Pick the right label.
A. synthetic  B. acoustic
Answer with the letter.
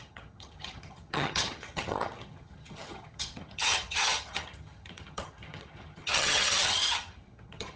A